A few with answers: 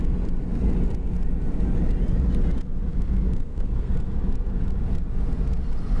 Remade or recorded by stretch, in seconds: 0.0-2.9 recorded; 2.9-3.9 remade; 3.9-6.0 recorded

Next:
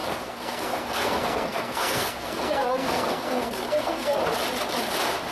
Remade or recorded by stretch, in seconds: 0.0-4.2 remade; 4.2-5.3 recorded

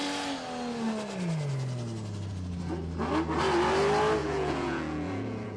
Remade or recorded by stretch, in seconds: 0.0-4.2 recorded; 4.2-5.6 remade